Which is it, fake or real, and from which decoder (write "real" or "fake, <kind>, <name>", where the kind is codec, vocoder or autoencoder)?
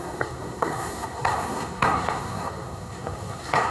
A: fake, codec, SNAC